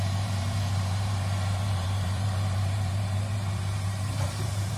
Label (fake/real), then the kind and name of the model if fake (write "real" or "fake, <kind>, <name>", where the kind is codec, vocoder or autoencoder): fake, vocoder, BigVGAN v2